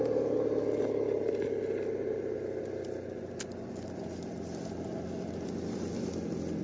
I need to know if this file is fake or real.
real